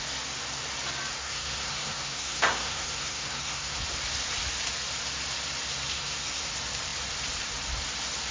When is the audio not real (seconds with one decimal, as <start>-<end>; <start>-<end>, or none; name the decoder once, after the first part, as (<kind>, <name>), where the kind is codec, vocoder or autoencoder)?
1.1-3.8 (codec, SNAC); 5.9-6.5